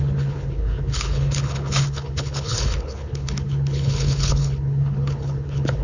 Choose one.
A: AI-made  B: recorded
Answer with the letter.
A